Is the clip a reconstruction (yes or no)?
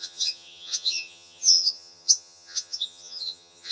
yes